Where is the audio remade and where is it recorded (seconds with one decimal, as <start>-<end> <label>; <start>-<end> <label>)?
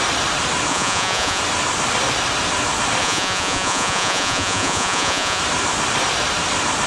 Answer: 0.0-0.7 recorded; 0.7-1.4 remade; 1.4-3.0 recorded; 3.0-5.4 remade; 5.4-6.9 recorded